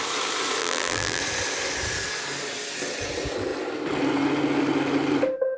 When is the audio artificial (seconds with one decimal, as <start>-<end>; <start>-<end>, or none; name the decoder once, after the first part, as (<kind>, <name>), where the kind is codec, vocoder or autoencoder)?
0.6-1.2 (vocoder, BigVGAN v2)